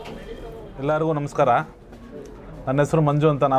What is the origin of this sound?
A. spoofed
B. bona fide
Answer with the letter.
B